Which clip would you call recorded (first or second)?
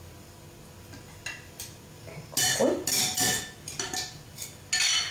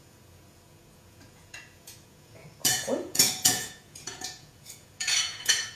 first